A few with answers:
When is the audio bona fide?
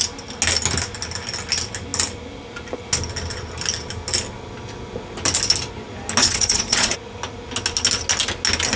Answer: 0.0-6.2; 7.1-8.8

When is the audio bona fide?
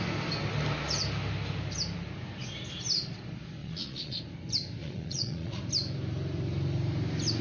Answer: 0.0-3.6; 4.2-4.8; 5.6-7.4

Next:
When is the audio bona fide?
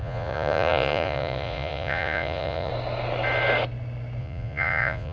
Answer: 2.7-4.2